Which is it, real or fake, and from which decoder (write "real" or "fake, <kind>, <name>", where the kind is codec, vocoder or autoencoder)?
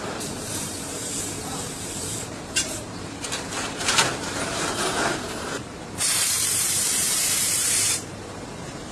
fake, vocoder, BigVGAN v2